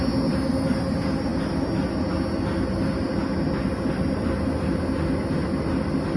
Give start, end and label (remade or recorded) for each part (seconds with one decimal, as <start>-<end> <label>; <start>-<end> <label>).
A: 0.0-6.2 recorded